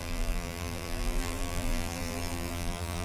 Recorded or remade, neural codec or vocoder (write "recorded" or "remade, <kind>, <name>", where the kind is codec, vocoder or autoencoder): remade, vocoder, BigVGAN v2